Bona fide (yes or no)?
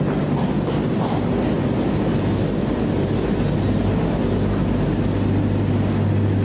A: yes